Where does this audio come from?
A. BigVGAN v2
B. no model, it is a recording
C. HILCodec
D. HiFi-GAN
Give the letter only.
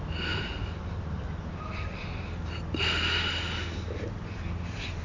B